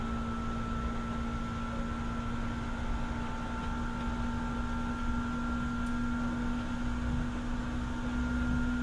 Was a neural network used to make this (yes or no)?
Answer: no